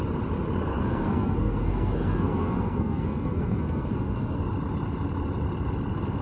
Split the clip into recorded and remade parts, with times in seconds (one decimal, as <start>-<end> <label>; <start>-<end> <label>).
0.0-0.7 recorded; 0.7-4.4 remade; 4.4-6.2 recorded